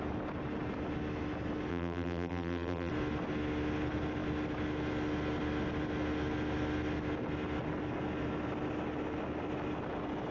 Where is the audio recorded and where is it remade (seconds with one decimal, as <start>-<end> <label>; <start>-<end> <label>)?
0.0-1.7 recorded; 1.7-2.9 remade; 2.9-10.3 recorded